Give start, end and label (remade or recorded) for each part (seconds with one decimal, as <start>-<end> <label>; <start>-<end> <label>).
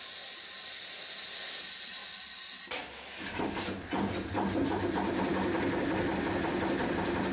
0.0-7.3 recorded